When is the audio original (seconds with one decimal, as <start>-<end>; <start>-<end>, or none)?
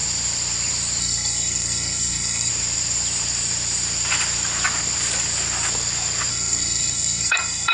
0.0-1.0; 2.5-6.3